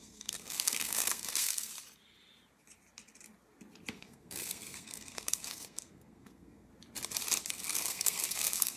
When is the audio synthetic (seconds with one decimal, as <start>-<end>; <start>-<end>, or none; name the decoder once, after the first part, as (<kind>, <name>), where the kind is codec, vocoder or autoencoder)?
0.0-1.7 (codec, SNAC); 3.9-6.7; 7.5-8.8